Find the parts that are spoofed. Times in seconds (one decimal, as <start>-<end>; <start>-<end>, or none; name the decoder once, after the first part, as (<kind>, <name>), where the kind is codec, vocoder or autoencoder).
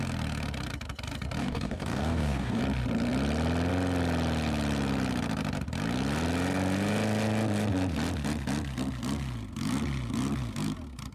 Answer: 1.4-2.6 (codec, DAC)